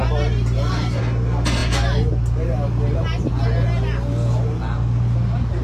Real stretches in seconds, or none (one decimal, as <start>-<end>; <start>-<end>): 1.0-5.6